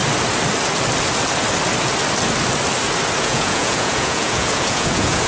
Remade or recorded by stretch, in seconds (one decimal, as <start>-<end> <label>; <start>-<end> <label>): 0.0-3.2 recorded; 3.2-5.3 remade